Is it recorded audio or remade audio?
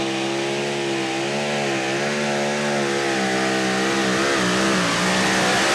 recorded